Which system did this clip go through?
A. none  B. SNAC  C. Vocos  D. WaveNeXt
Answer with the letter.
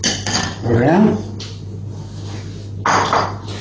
A